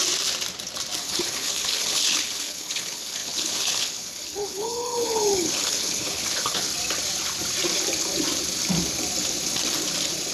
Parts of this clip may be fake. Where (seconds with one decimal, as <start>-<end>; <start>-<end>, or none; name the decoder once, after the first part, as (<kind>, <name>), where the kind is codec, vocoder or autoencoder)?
1.0-6.7 (codec, HILCodec)